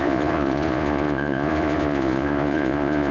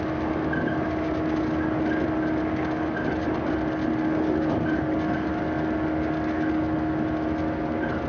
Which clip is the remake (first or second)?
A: first